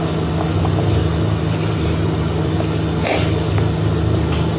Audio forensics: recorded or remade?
recorded